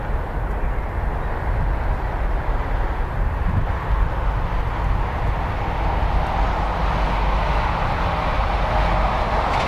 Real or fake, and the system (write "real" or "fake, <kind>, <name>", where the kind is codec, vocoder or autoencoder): real